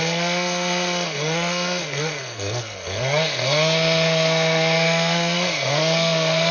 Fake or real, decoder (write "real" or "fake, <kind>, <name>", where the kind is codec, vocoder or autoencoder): fake, codec, SNAC